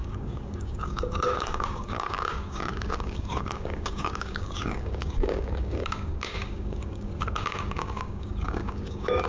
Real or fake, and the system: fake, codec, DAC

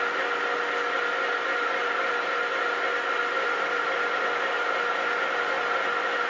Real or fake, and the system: real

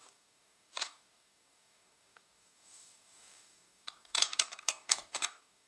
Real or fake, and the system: fake, codec, DAC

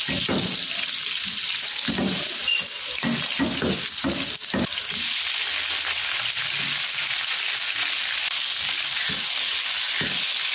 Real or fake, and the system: real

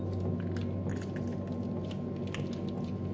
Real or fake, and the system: real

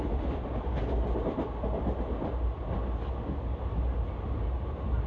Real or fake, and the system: real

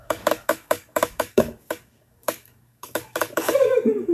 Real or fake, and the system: fake, codec, DAC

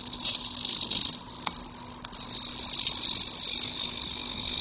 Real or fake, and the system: real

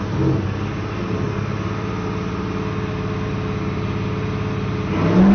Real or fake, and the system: real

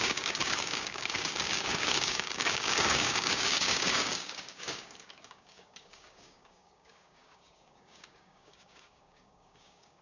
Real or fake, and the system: fake, codec, DAC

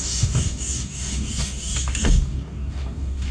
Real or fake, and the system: fake, codec, DAC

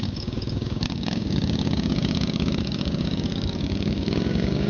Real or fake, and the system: fake, codec, DAC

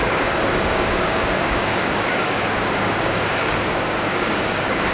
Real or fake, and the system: fake, codec, DAC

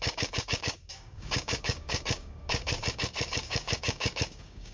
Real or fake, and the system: fake, codec, DAC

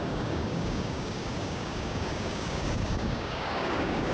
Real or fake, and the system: fake, codec, DAC